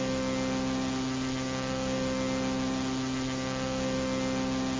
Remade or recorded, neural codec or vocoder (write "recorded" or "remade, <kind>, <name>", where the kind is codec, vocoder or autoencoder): recorded